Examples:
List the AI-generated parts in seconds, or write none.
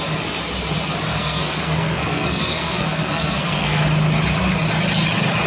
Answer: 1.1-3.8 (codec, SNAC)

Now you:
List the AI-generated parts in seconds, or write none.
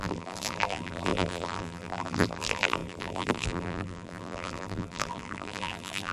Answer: 0.0-6.1 (vocoder, BigVGAN v2)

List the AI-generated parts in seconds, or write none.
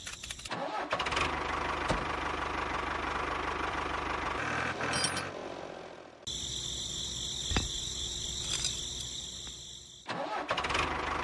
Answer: none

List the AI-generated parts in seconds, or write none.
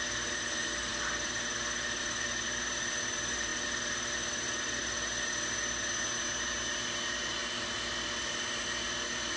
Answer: none